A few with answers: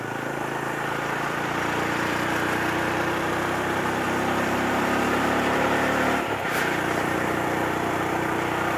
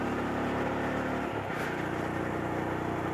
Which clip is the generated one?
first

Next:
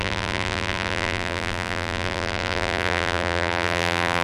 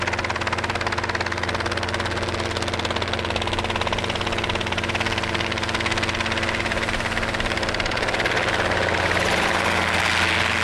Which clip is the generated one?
first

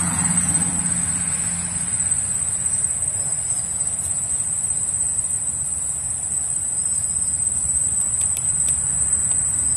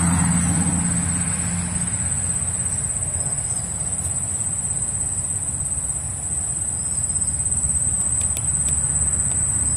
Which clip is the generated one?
first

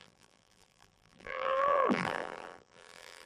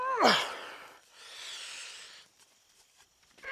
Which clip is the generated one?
first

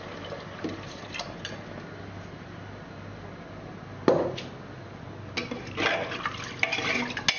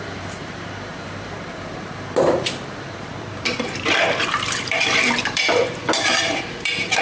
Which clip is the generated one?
second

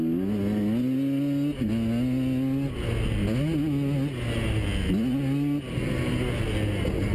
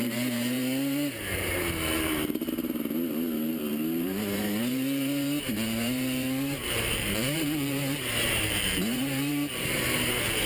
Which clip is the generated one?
second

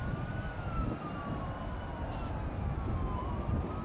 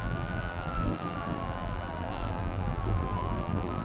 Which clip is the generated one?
second